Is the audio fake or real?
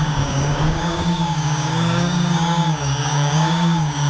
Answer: fake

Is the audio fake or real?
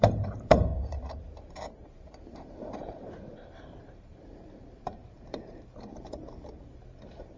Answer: fake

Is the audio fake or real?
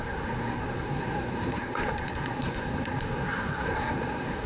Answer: fake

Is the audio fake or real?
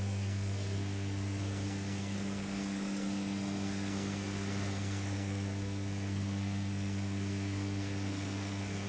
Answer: fake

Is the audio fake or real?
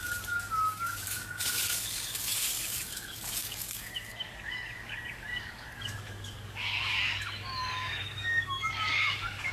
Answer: fake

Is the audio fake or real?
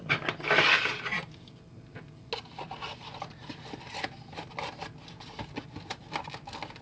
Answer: real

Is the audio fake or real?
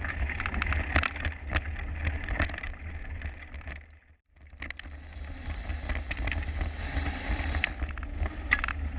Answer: real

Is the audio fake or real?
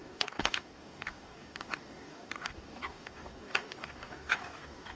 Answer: fake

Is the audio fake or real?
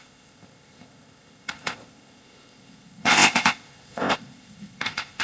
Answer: fake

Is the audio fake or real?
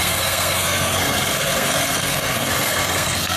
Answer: fake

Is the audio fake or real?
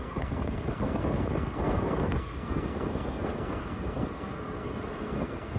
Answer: fake